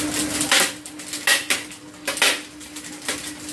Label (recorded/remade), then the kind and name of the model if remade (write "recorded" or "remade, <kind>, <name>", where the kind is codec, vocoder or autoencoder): recorded